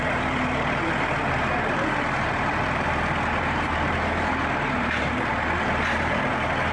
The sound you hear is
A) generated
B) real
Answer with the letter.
A